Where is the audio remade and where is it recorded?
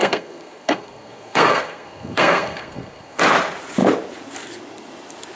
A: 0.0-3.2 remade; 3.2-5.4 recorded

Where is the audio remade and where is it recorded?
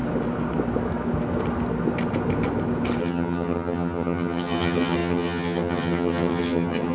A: 0.0-3.0 recorded; 3.0-6.9 remade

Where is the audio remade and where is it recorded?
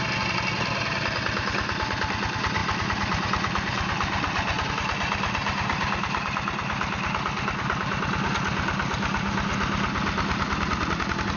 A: 0.0-11.4 recorded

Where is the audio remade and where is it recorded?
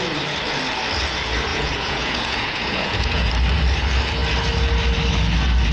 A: 0.0-1.5 recorded; 1.5-3.3 remade; 3.3-5.7 recorded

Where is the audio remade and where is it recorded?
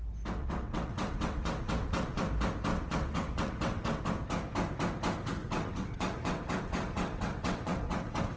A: 0.0-0.4 recorded; 0.4-2.2 remade; 2.2-2.7 recorded; 2.7-4.0 remade; 4.0-5.4 recorded; 5.4-8.4 remade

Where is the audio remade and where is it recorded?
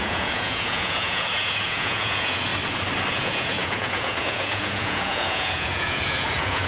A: 0.0-2.5 remade; 2.5-3.1 recorded; 3.1-6.7 remade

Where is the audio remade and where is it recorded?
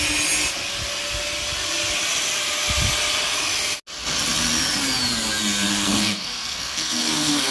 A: 0.0-5.7 recorded; 5.7-7.5 remade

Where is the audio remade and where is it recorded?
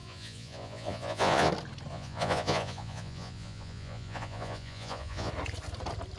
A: 0.0-1.5 remade; 1.5-1.9 recorded; 1.9-5.3 remade; 5.3-6.2 recorded